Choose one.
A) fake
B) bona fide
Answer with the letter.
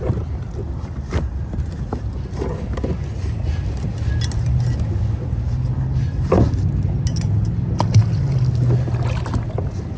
B